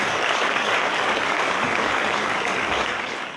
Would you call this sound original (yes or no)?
no